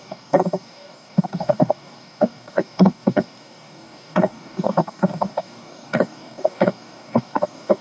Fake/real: fake